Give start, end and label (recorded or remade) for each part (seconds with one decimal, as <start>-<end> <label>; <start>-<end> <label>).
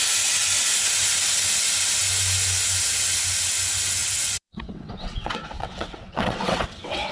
0.0-4.0 recorded; 4.0-7.1 remade